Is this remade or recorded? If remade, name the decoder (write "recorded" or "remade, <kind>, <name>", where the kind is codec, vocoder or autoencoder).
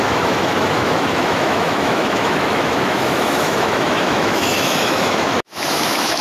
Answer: remade, autoencoder, DAC-VAE